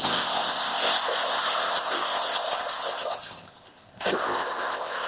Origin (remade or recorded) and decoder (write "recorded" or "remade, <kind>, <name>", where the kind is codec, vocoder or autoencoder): remade, codec, ZipCodec